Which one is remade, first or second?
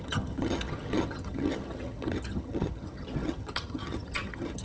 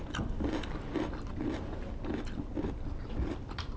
first